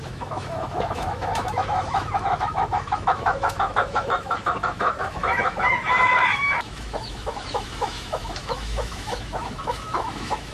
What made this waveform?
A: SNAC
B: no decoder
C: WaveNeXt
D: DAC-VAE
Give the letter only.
D